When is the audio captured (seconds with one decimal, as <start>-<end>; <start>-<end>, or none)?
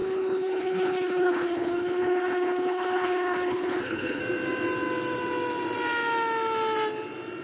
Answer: 4.2-7.4